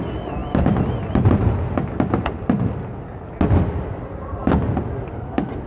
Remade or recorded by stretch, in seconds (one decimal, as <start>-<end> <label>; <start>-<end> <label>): 0.0-5.7 recorded